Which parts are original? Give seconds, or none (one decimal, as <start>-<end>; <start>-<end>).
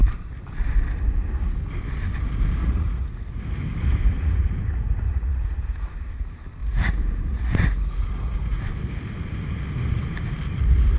0.0-2.6; 3.4-4.1; 5.5-6.6; 8.6-11.0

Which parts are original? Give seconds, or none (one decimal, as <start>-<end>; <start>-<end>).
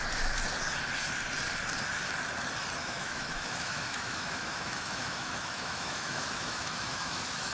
0.0-2.8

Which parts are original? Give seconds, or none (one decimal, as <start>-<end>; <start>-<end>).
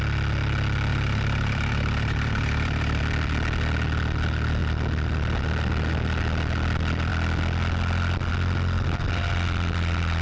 0.0-0.9; 3.0-10.2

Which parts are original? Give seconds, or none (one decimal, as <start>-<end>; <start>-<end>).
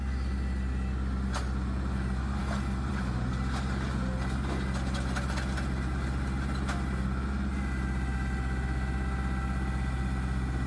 0.0-10.7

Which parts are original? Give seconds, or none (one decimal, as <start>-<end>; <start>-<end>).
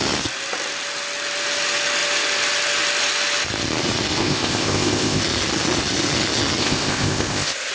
0.0-4.2; 5.2-6.6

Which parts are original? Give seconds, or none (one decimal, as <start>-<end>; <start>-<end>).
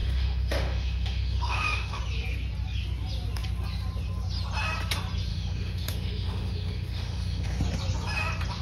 2.0-5.3; 7.6-8.6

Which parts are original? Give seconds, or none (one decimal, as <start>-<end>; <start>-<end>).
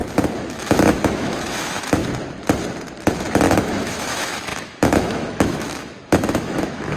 0.0-0.5; 2.0-3.6